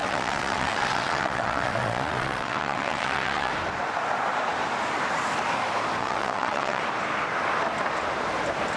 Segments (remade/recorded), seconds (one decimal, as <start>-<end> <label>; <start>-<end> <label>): 0.0-3.5 remade; 3.5-6.0 recorded; 6.0-6.8 remade; 6.8-8.8 recorded